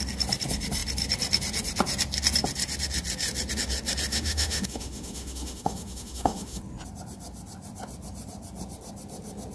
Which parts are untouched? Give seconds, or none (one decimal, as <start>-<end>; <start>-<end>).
0.0-4.1; 6.6-9.5